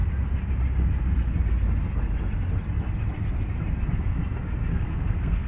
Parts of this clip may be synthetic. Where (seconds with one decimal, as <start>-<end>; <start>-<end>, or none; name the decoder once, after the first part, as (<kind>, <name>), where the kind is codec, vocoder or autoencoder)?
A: 4.7-5.5 (codec, SNAC)